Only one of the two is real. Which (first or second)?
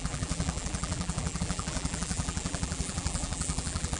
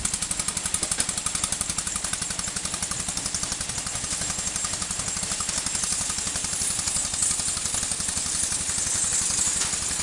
second